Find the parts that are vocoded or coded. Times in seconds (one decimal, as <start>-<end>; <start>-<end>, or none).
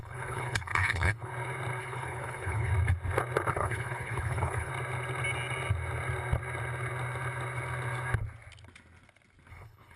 0.0-1.3; 1.8-2.7; 3.5-4.7; 9.5-10.0